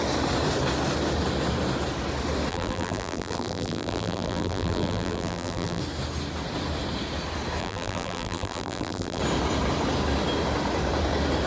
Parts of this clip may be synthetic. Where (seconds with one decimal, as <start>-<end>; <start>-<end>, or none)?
2.5-5.8; 7.6-9.2